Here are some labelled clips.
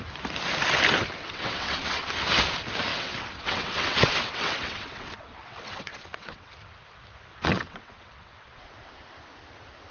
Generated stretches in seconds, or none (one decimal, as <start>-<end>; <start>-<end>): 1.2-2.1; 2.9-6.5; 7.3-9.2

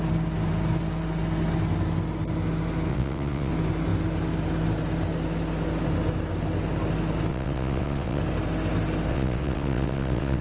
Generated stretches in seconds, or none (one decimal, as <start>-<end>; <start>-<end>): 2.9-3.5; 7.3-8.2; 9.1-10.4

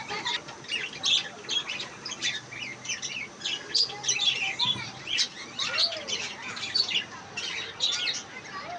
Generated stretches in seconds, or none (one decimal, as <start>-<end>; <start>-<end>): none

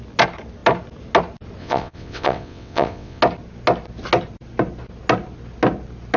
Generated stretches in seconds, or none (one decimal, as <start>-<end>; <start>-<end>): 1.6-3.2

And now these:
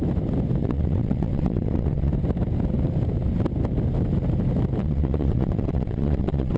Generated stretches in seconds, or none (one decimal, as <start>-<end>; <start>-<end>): 0.6-2.1; 4.8-6.6

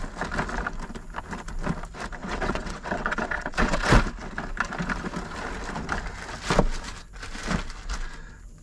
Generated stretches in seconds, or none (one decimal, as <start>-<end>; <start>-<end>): 2.2-4.0

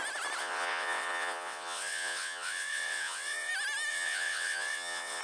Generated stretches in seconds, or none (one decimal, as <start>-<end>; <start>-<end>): 0.4-3.5; 3.9-5.2

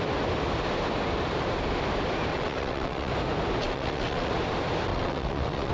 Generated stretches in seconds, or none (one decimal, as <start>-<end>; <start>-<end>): 2.3-3.1; 3.6-4.3; 4.9-5.7